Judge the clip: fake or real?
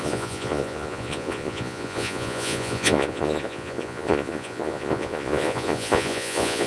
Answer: fake